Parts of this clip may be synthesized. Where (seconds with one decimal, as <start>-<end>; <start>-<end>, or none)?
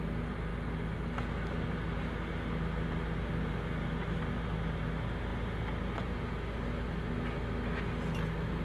none